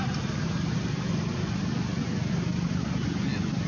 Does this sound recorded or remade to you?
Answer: recorded